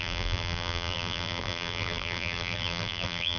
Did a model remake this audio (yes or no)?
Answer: yes